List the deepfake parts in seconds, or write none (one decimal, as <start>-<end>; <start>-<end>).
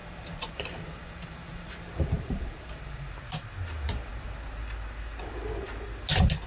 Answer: 0.0-3.1